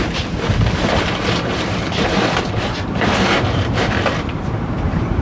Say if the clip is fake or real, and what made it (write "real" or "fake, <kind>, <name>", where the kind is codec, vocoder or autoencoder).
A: fake, vocoder, BigVGAN v2